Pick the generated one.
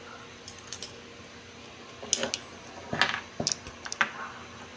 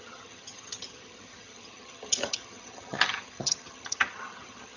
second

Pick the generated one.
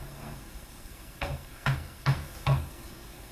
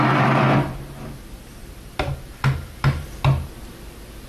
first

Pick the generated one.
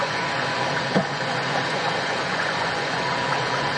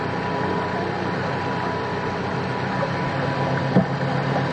first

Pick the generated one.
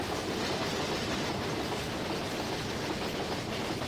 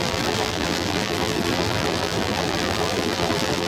second